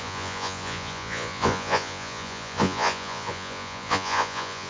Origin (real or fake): fake